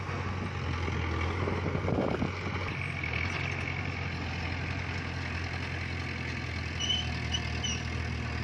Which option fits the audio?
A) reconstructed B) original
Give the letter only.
B